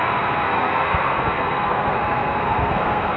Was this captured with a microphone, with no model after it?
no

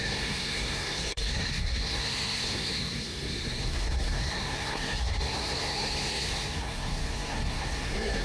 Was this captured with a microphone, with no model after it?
no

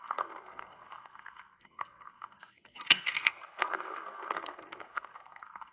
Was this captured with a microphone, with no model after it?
no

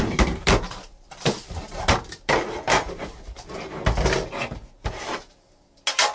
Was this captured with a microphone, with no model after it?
yes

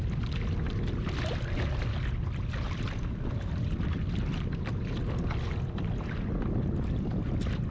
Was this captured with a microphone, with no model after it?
yes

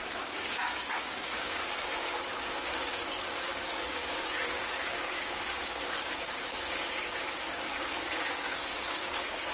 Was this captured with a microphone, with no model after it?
no